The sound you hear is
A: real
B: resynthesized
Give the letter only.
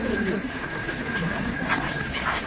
B